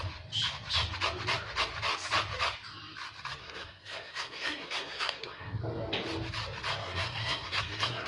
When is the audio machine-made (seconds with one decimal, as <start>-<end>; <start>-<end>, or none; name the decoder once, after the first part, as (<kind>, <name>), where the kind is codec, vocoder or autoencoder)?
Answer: 3.4-5.6 (codec, SNAC); 6.8-8.1